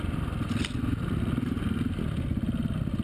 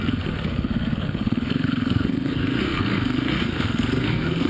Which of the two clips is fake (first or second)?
second